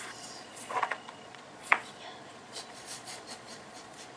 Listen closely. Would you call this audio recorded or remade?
remade